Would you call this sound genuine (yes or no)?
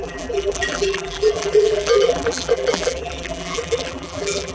no